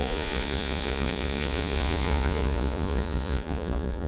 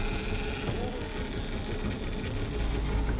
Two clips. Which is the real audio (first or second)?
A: second